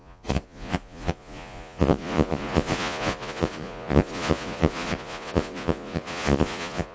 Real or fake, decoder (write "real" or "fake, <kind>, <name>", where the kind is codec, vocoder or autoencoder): fake, vocoder, Vocos